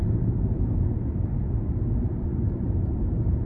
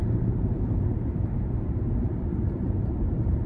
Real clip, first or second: first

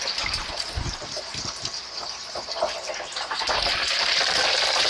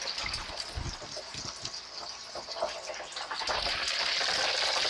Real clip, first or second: second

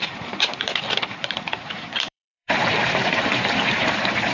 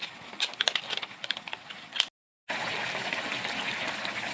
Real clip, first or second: second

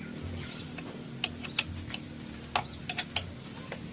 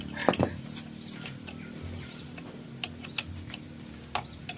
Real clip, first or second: first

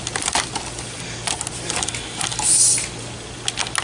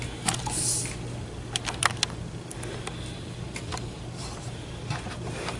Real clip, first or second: first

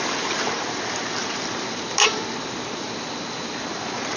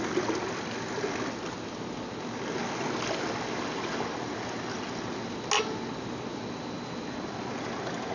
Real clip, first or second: second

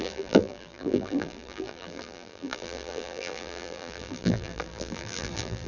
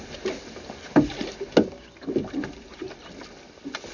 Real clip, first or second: second